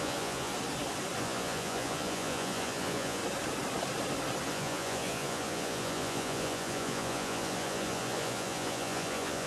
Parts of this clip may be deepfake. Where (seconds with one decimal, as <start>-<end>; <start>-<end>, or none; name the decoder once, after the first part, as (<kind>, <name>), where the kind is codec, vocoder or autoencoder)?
0.0-0.5 (vocoder, Vocos); 1.2-3.2; 4.5-9.5